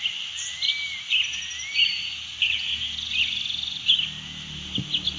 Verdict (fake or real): real